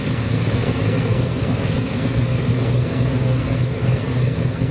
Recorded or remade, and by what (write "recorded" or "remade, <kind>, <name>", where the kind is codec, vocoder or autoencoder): remade, codec, SNAC